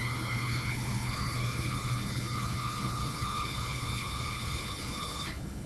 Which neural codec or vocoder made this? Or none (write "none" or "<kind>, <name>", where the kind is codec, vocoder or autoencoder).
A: codec, HILCodec